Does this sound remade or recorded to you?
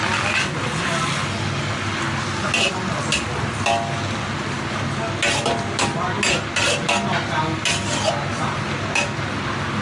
recorded